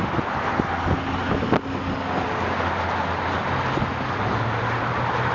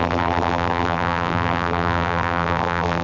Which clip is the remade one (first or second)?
second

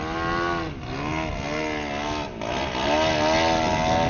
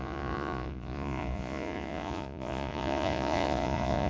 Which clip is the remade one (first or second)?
second